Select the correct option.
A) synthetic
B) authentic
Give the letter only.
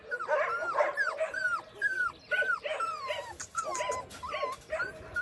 B